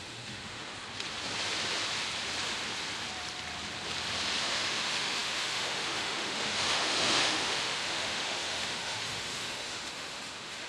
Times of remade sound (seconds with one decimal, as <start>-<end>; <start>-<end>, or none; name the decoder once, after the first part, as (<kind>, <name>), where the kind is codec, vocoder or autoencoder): 0.0-0.7 (autoencoder, DAC-VAE); 4.4-10.7